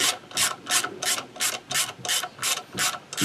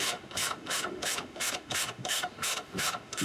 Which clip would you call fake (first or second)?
second